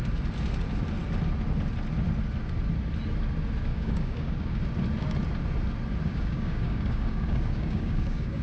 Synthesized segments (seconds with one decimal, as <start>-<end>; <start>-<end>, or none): 3.7-4.6; 6.0-8.4